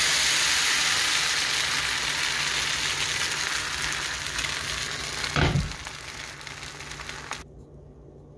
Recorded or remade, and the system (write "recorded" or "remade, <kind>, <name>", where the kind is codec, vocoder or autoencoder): recorded